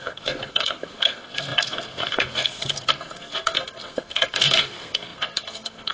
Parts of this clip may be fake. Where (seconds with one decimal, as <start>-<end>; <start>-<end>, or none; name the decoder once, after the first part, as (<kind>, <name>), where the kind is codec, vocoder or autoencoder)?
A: 0.0-5.9 (codec, SNAC)